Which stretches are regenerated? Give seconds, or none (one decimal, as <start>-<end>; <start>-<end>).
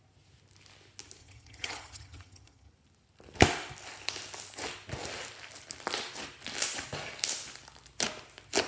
1.2-2.7